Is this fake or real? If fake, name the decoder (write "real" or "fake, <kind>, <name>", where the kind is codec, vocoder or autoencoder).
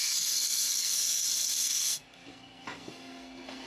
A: fake, codec, SNAC